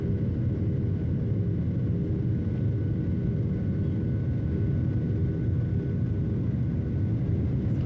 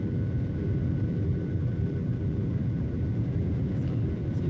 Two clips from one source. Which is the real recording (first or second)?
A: first